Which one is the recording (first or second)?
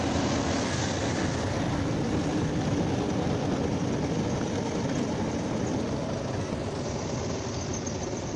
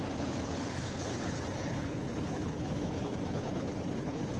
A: first